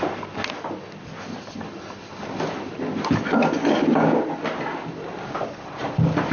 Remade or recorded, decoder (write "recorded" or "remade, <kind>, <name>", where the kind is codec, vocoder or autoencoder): recorded